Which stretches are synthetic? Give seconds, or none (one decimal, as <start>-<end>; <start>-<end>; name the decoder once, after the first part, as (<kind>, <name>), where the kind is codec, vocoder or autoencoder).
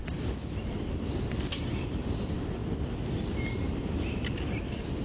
0.0-2.6 (vocoder, BigVGAN v2); 4.5-5.0